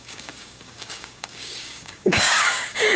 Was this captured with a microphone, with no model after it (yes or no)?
no